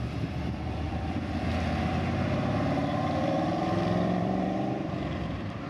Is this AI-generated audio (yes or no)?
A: yes